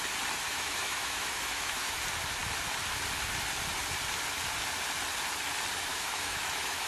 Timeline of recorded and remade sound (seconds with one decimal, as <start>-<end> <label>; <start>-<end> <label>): 0.0-0.5 recorded; 0.5-2.0 remade; 2.0-5.9 recorded; 5.9-6.9 remade